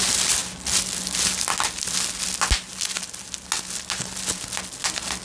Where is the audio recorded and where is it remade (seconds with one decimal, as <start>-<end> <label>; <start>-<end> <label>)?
0.0-5.2 recorded